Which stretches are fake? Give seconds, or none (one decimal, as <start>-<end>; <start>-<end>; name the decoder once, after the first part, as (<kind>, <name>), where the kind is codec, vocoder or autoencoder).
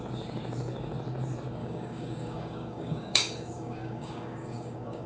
1.6-5.1 (codec, DAC)